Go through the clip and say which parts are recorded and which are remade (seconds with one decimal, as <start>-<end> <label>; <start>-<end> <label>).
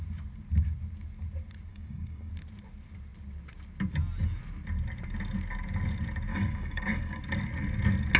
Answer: 0.0-1.7 recorded; 1.7-2.3 remade; 2.3-6.3 recorded; 6.3-7.2 remade; 7.2-8.2 recorded